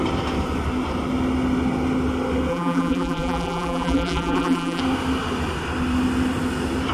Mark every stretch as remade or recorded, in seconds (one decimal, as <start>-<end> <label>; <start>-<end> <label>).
0.0-2.5 recorded; 2.5-4.8 remade; 4.8-6.9 recorded